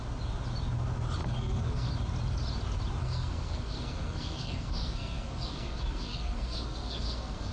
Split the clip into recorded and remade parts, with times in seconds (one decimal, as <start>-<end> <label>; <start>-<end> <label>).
0.0-1.2 recorded; 1.2-1.9 remade; 1.9-3.0 recorded; 3.0-7.5 remade